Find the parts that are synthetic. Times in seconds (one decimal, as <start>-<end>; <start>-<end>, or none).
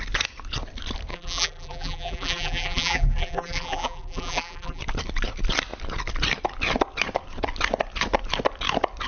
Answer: 1.1-4.8